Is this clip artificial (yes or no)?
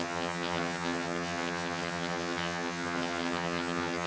yes